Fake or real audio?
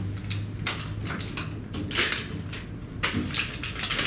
real